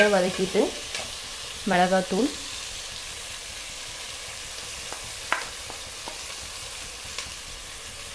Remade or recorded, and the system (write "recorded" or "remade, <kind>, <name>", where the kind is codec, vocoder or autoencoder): remade, vocoder, BigVGAN v2